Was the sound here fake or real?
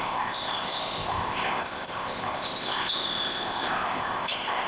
fake